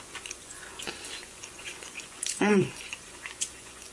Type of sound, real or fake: fake